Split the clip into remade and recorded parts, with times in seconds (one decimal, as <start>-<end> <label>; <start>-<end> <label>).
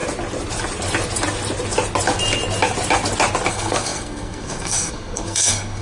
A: 0.0-3.5 recorded; 3.5-5.8 remade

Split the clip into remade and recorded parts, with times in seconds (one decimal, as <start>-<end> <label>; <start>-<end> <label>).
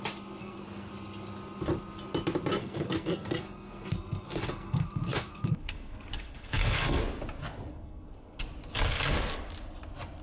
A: 0.0-0.4 recorded; 0.4-0.9 remade; 0.9-2.6 recorded; 2.6-7.0 remade; 7.0-7.7 recorded; 7.7-8.4 remade; 8.4-10.2 recorded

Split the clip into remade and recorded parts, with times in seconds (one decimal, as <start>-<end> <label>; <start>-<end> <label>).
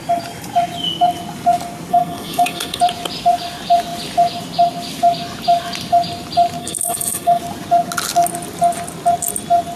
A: 0.0-1.9 recorded; 1.9-2.8 remade; 2.8-6.6 recorded; 6.6-7.4 remade; 7.4-9.8 recorded